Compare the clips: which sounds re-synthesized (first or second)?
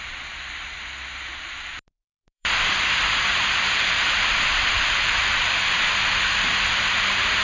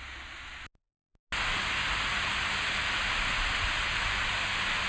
first